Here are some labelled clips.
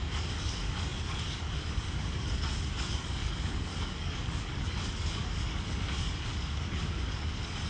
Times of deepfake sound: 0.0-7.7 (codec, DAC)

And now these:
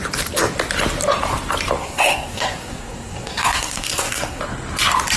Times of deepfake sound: 1.8-4.4 (codec, SNAC)

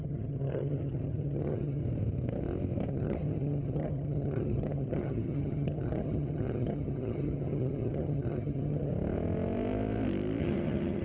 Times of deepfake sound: 0.0-1.8 (vocoder, HiFi-GAN); 2.9-8.9; 10.4-11.0

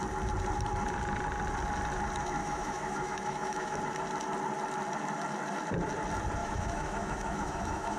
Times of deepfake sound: 2.4-3.8 (autoencoder, DAC-VAE); 6.4-8.0